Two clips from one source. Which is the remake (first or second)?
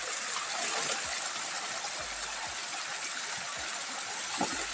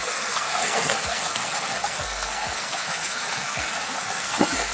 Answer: second